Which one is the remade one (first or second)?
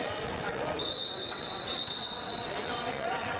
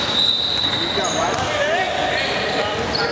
first